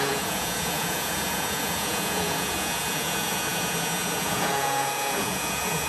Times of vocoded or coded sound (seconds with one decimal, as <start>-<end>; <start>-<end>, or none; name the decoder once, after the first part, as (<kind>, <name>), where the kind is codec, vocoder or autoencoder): 0.0-5.9 (vocoder, Vocos)